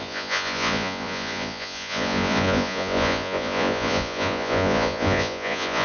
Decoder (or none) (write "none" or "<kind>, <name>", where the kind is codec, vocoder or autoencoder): vocoder, Vocos